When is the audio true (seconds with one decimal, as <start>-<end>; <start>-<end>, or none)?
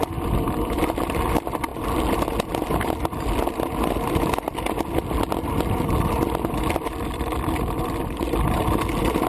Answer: 0.0-9.3